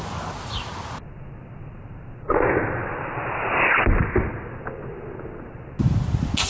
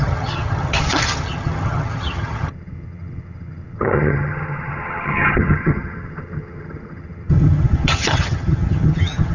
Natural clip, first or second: first